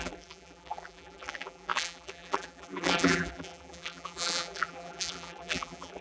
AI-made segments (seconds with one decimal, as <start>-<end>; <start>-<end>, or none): 0.0-6.0